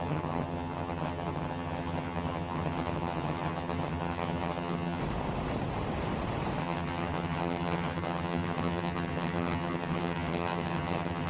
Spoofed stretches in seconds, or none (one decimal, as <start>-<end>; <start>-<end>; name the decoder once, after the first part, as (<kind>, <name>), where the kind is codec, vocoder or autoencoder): 0.0-5.0 (vocoder, HiFi-GAN); 6.6-11.3